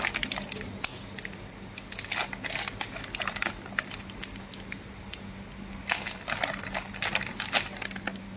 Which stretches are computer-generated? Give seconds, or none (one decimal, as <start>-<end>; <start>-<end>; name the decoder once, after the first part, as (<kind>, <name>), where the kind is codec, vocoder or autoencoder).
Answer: none